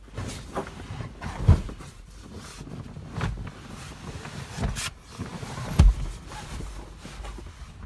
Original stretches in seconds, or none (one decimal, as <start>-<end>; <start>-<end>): 0.0-7.9